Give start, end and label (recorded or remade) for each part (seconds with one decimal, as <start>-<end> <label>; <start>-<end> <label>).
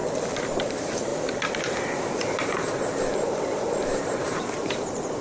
0.0-0.5 recorded; 0.5-1.1 remade; 1.1-1.6 recorded; 1.6-5.2 remade